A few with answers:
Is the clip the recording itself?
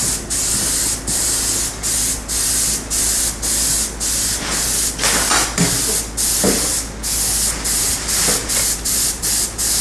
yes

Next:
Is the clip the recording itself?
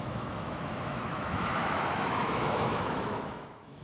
no